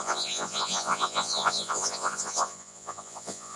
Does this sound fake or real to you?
fake